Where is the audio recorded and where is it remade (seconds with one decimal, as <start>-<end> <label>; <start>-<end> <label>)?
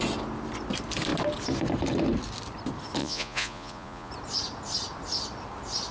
0.0-3.0 recorded; 3.0-4.1 remade; 4.1-5.9 recorded